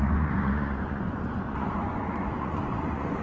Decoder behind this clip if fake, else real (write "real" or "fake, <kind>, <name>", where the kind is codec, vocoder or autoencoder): fake, vocoder, Vocos